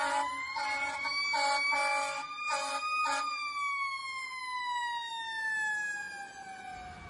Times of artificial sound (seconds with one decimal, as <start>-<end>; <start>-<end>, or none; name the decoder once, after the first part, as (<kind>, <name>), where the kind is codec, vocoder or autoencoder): none

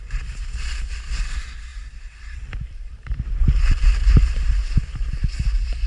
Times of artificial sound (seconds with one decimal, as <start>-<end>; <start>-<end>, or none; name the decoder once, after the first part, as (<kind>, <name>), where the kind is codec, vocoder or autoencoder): 1.7-4.4 (vocoder, BigVGAN v2)

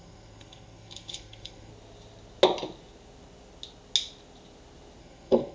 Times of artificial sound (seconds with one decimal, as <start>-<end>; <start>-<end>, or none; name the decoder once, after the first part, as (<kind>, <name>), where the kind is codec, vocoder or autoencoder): 0.0-1.7 (codec, SNAC); 5.0-5.5